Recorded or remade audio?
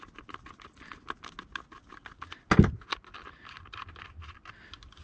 recorded